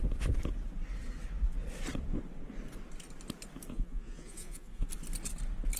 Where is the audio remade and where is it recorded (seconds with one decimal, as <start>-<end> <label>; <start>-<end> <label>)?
0.0-3.7 recorded; 3.7-4.9 remade; 4.9-5.8 recorded